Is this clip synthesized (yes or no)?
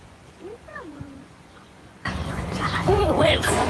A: yes